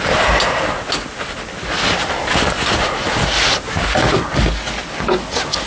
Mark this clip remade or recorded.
recorded